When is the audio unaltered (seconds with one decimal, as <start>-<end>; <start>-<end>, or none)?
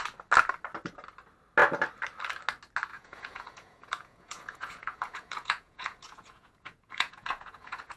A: 0.0-2.9